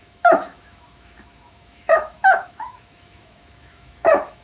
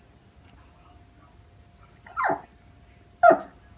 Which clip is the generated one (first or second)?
first